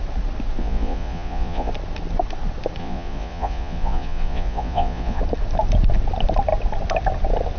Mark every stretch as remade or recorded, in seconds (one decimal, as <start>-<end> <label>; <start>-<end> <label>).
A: 0.0-0.6 recorded; 0.6-1.7 remade; 1.7-2.8 recorded; 2.8-5.2 remade; 5.2-7.6 recorded